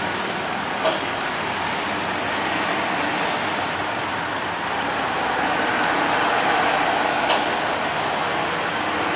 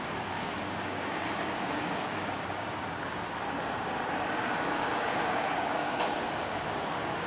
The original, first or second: first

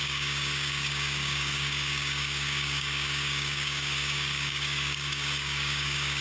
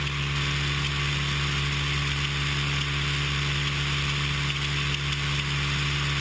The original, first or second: second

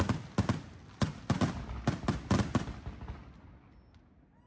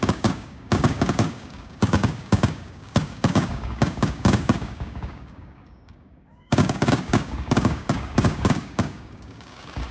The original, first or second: first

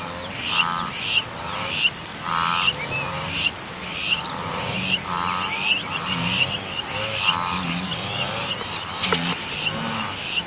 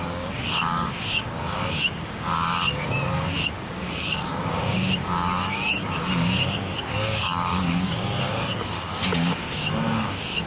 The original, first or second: first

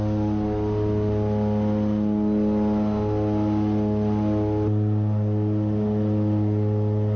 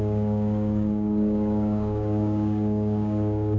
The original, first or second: first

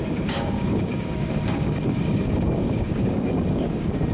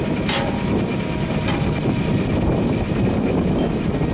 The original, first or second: second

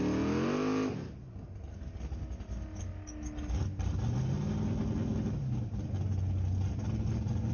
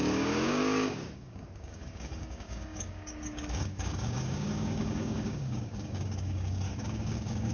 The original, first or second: first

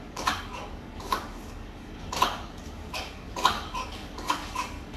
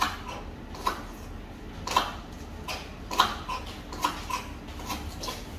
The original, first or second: second